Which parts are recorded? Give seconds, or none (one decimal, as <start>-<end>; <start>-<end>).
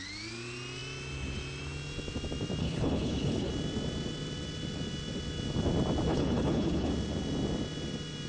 0.0-2.6; 3.5-6.1; 6.9-8.3